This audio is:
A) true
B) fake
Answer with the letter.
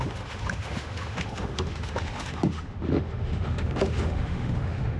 B